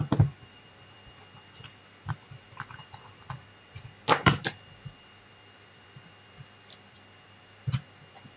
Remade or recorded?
remade